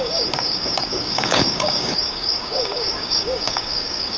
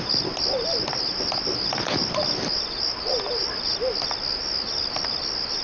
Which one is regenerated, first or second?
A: first